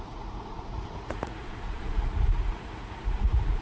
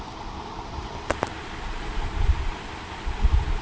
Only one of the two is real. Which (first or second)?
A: second